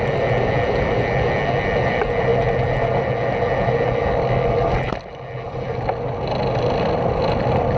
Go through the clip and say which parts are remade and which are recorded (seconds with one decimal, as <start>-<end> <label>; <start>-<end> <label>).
0.0-7.8 recorded

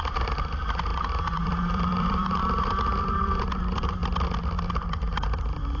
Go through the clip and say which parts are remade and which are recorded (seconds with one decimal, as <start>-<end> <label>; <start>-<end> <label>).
0.0-2.4 remade; 2.4-3.0 recorded; 3.0-4.0 remade; 4.0-4.7 recorded; 4.7-5.8 remade

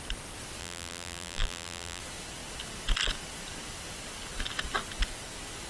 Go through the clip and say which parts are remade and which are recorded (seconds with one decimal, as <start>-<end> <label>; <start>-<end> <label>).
0.0-0.6 recorded; 0.6-2.0 remade; 2.0-5.7 recorded

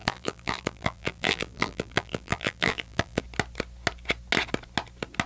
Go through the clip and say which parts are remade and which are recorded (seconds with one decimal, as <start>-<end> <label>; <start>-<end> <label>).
0.0-3.2 remade; 3.2-5.3 recorded

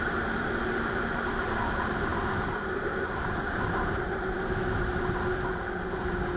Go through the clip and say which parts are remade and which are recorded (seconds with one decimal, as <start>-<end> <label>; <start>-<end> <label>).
0.0-6.4 remade

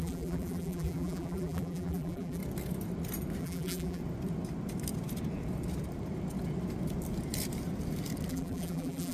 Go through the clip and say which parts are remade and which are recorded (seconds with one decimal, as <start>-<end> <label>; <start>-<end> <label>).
0.0-2.4 remade; 2.4-3.4 recorded; 3.4-4.0 remade; 4.0-8.3 recorded; 8.3-9.1 remade

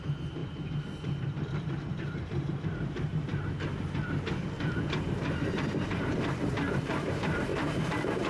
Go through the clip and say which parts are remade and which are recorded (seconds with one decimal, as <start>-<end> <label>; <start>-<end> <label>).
0.0-3.3 remade; 3.3-5.0 recorded; 5.0-8.3 remade

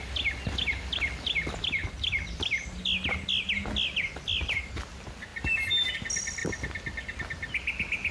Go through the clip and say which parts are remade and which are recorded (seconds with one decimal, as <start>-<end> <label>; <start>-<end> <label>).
0.0-1.8 recorded; 1.8-2.8 remade; 2.8-8.1 recorded